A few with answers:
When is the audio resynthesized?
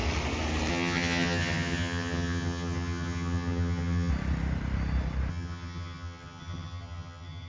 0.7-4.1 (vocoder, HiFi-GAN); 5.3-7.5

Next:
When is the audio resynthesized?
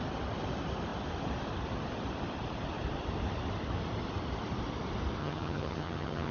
5.2-6.3 (vocoder, HiFi-GAN)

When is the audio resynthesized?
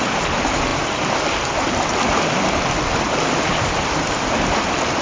none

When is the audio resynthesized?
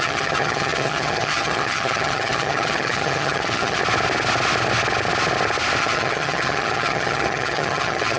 0.0-3.8 (vocoder, HiFi-GAN); 5.8-8.2